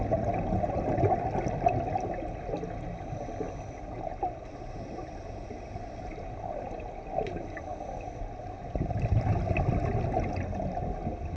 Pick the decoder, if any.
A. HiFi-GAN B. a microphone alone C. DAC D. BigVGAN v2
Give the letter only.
B